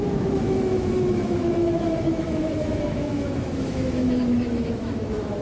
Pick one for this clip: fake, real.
fake